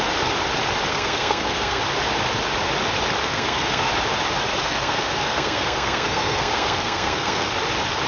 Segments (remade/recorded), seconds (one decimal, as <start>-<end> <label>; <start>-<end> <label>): 0.0-0.9 recorded; 0.9-1.8 remade; 1.8-3.2 recorded; 3.2-3.9 remade; 3.9-4.6 recorded; 4.6-7.5 remade; 7.5-8.1 recorded